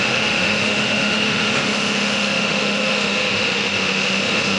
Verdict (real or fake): fake